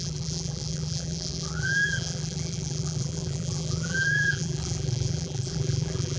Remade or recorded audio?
remade